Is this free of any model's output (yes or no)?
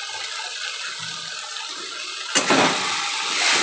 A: yes